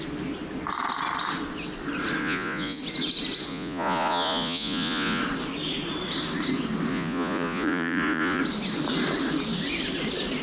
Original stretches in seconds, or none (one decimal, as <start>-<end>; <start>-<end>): 0.0-2.2; 2.8-3.5; 5.2-6.9; 8.4-10.4